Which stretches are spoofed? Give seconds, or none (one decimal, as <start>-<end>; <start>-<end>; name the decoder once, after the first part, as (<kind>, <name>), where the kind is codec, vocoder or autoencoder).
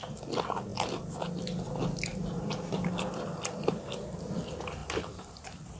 2.1-4.3 (vocoder, BigVGAN v2); 4.8-5.8